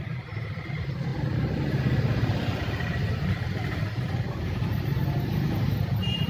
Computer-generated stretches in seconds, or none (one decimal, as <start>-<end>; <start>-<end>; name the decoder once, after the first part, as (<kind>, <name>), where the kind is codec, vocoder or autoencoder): 0.0-6.3 (vocoder, BigVGAN v2)